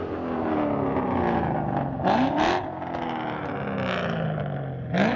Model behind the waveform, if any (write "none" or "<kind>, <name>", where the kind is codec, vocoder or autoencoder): none